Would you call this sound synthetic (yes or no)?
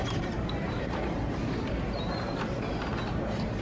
yes